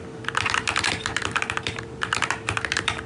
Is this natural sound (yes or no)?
no